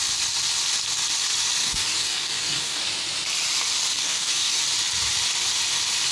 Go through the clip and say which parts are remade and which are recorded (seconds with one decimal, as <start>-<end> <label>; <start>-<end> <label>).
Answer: 0.0-1.6 recorded; 1.6-2.8 remade; 2.8-4.0 recorded; 4.0-4.6 remade; 4.6-6.1 recorded